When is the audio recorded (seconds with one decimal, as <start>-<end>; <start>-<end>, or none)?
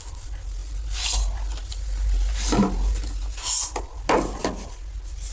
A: 0.0-5.3